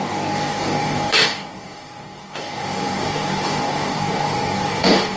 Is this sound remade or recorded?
remade